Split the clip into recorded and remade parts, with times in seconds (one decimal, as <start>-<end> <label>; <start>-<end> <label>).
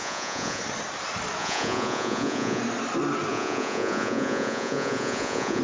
0.0-0.6 remade; 0.6-1.4 recorded; 1.4-2.6 remade; 2.6-3.3 recorded; 3.3-5.6 remade